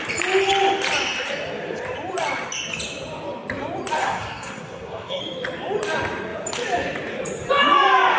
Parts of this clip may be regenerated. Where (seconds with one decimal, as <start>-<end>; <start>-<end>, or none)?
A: 4.0-5.2